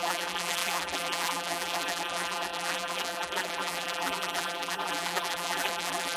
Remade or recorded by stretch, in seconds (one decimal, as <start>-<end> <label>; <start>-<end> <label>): 0.0-6.2 remade